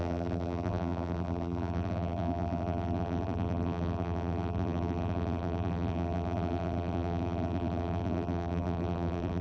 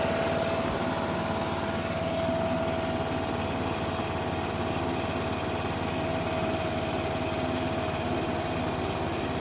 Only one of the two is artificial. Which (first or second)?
first